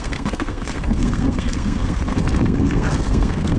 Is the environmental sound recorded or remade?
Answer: remade